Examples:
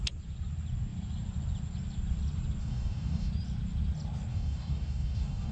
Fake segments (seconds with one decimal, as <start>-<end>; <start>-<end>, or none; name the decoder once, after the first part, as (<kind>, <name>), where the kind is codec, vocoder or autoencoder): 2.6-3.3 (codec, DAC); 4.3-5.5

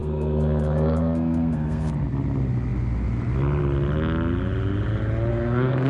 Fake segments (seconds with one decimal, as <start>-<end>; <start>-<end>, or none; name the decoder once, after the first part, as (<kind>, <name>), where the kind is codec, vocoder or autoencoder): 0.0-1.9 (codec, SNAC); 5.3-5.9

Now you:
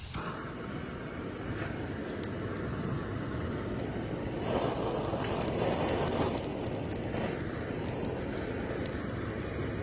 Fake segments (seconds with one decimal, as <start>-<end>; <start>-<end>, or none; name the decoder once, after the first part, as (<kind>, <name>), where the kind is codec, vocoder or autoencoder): none

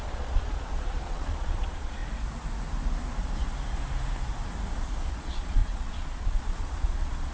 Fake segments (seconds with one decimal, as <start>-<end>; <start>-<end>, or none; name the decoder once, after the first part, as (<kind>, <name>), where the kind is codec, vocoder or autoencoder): 0.0-2.0 (vocoder, Vocos); 5.1-7.3

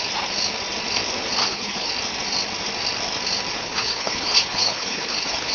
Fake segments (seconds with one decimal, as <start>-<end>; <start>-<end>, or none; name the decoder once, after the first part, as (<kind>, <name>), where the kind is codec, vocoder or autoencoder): 1.4-1.9 (codec, HILCodec); 3.6-5.5

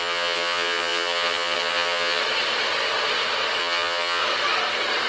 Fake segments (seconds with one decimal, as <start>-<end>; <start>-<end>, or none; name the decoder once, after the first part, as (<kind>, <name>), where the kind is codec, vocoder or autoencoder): 0.0-2.2 (vocoder, HiFi-GAN); 3.6-4.2